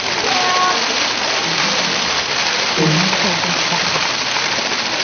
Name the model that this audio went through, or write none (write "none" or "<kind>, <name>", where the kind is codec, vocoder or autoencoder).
none